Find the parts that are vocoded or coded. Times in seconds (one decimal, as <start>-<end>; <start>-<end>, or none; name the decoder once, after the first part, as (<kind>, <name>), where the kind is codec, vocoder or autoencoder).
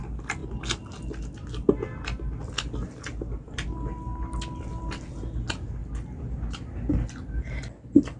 none